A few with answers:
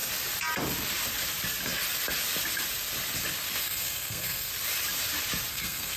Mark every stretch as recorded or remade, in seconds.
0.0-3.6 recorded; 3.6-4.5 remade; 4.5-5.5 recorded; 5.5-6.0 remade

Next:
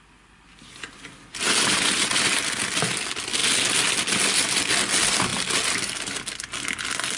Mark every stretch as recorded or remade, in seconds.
0.0-7.2 recorded

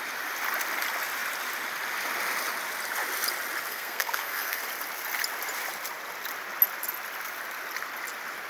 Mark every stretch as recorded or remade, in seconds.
0.0-3.7 recorded; 3.7-4.6 remade; 4.6-8.5 recorded

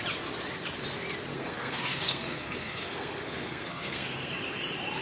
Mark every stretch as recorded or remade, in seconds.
0.0-1.3 recorded; 1.3-4.3 remade; 4.3-5.0 recorded

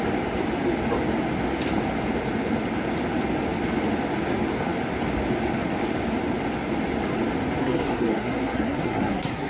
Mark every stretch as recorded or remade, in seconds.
0.0-7.6 recorded; 7.6-9.5 remade

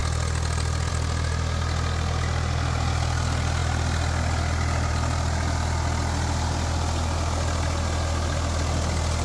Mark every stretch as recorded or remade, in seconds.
0.0-9.2 recorded

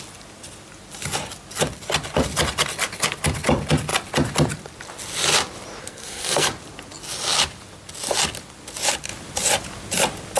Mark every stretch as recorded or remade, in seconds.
0.0-5.8 recorded; 5.8-6.5 remade; 6.5-10.4 recorded